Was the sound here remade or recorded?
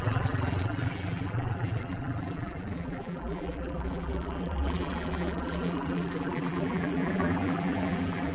remade